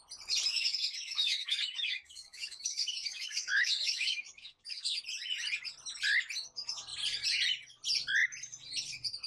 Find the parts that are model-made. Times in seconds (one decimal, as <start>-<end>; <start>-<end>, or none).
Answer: 0.5-5.0